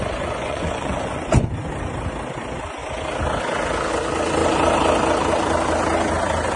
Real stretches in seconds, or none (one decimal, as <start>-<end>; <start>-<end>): 1.5-6.6